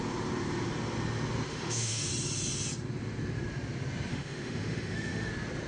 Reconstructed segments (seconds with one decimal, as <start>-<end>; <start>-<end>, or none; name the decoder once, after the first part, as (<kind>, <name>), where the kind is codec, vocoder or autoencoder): 1.5-2.1 (autoencoder, DAC-VAE); 4.1-5.3